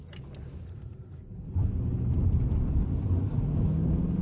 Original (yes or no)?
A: yes